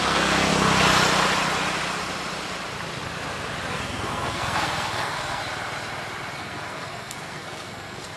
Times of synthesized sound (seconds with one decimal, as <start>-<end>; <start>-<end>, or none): 0.0-0.5; 3.7-5.4; 6.4-8.2